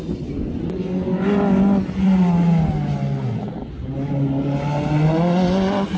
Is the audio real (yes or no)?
yes